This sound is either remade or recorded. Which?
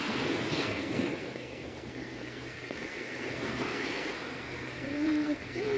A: remade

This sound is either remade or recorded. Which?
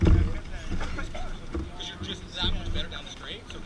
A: recorded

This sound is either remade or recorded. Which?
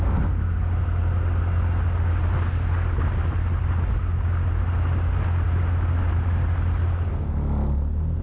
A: recorded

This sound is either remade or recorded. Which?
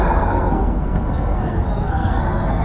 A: remade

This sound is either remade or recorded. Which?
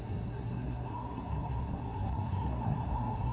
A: remade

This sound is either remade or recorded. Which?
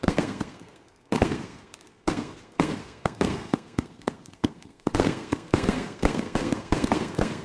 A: remade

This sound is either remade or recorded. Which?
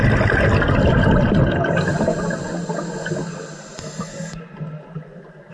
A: recorded